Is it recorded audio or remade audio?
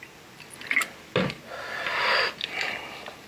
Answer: recorded